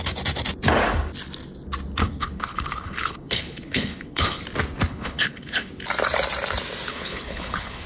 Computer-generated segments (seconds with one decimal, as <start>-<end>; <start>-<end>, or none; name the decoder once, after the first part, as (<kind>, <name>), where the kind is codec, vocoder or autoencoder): 2.0-4.4 (codec, HILCodec); 4.9-5.7; 6.9-7.9